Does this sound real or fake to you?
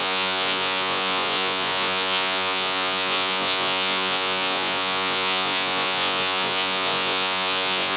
fake